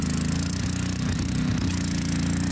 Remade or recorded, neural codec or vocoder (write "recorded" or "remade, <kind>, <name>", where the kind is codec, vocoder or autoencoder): recorded